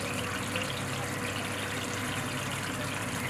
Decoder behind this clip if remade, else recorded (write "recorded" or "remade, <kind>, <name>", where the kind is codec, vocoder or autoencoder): recorded